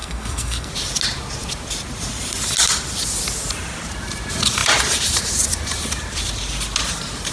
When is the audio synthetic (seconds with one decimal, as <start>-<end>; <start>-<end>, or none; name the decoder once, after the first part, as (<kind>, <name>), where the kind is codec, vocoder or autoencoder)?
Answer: 0.0-0.7 (codec, SNAC)